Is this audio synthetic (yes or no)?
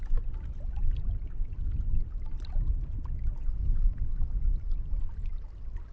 no